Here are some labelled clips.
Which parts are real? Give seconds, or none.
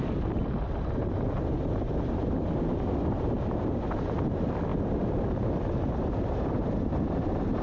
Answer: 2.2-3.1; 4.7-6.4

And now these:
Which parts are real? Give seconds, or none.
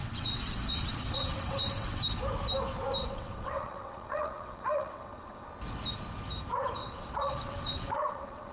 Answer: 2.0-3.0; 5.5-6.8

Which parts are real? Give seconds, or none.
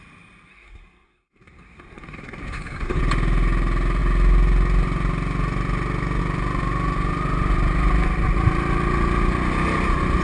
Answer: 0.0-0.5; 3.0-10.2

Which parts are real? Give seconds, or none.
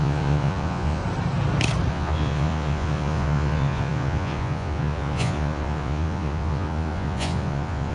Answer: 1.0-1.9